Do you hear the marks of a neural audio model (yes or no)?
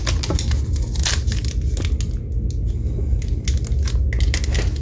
no